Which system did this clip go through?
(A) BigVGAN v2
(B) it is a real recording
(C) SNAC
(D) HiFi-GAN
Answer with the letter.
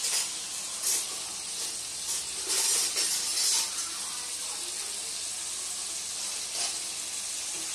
B